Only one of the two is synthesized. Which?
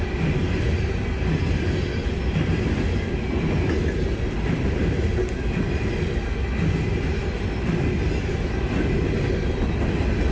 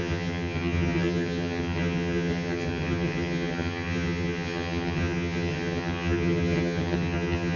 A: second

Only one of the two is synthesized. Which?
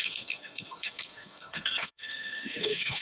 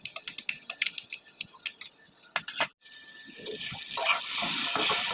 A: first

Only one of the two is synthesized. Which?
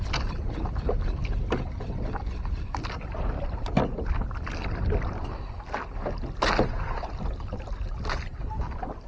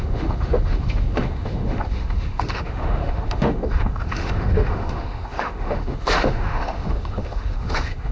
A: second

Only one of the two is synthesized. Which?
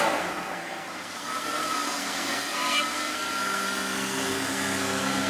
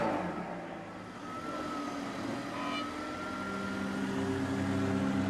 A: first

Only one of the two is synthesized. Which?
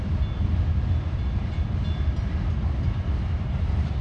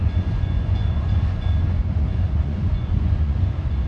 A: second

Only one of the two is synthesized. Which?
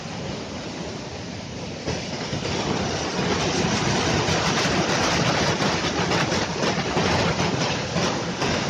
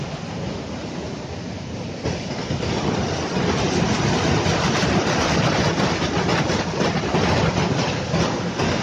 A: first